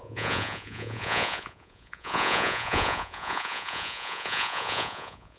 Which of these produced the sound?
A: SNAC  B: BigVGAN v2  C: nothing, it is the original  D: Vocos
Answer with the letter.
D